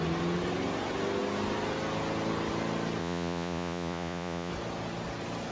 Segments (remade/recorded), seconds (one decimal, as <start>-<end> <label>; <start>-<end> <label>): 0.0-3.0 recorded; 3.0-4.5 remade; 4.5-5.5 recorded